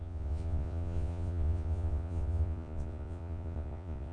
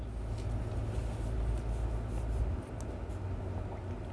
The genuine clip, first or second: second